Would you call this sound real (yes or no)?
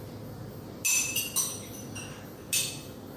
yes